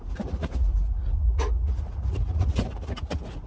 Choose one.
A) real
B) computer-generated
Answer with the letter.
B